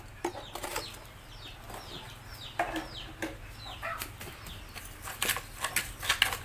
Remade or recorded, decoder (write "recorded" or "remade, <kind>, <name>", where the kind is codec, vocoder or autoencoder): recorded